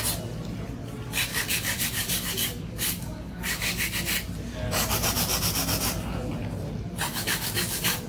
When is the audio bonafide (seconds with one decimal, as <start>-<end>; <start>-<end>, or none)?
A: 0.0-1.3; 4.0-7.1